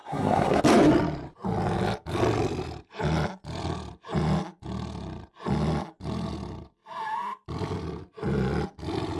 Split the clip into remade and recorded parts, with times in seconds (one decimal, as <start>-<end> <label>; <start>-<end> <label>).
0.0-0.6 remade; 0.6-9.2 recorded